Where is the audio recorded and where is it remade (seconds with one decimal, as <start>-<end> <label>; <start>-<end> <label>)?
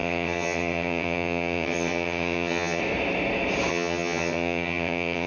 0.0-2.8 remade; 2.8-3.7 recorded; 3.7-5.3 remade